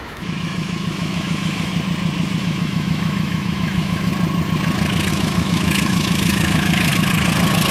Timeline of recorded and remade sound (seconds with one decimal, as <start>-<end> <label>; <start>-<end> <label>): 0.0-1.7 remade; 1.7-2.4 recorded; 2.4-4.1 remade; 4.1-5.1 recorded; 5.1-6.9 remade; 6.9-7.7 recorded